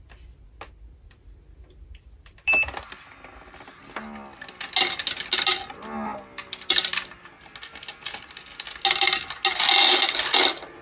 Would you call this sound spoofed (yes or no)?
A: no